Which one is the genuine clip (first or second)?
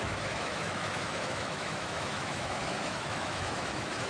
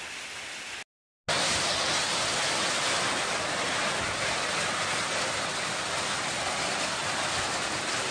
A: second